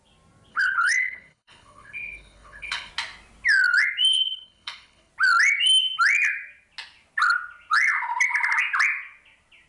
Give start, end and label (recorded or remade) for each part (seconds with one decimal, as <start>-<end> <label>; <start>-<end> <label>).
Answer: 0.0-0.5 recorded; 0.5-2.9 remade; 2.9-4.1 recorded; 4.1-5.1 remade; 5.1-9.7 recorded